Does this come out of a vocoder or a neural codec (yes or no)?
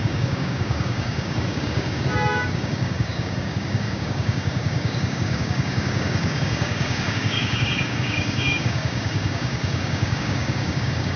yes